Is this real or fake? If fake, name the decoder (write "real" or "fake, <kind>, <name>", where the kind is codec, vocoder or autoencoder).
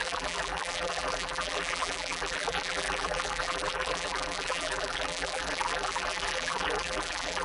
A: fake, vocoder, BigVGAN v2